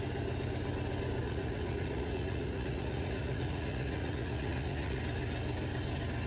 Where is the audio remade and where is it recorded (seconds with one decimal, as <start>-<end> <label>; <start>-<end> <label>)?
0.0-1.2 recorded; 1.2-5.0 remade; 5.0-6.3 recorded